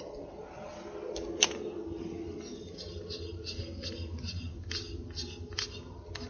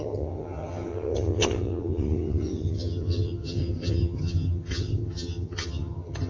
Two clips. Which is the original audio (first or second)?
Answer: first